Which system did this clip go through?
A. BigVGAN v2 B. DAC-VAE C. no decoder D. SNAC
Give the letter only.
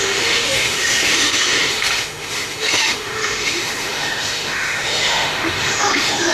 B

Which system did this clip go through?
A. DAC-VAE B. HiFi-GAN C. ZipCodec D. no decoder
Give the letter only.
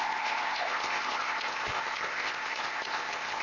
C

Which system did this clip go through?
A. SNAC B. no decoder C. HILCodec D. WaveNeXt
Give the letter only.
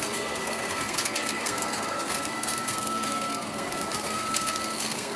A